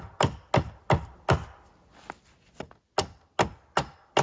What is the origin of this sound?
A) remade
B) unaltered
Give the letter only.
B